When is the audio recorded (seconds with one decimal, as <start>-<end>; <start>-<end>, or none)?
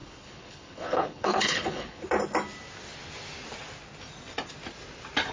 2.0-5.3